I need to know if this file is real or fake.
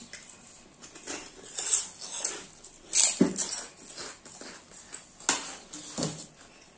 real